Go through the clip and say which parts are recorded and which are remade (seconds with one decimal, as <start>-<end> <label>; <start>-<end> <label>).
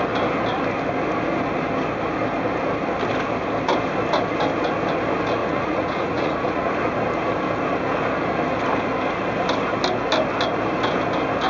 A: 0.0-5.4 recorded; 5.4-6.7 remade; 6.7-11.5 recorded